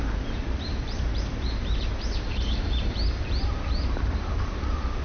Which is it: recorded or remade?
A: remade